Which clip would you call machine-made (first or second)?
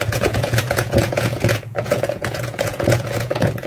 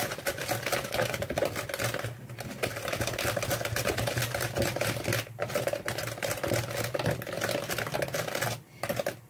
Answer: first